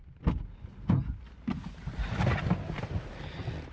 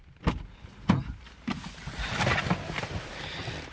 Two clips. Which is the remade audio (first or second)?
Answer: second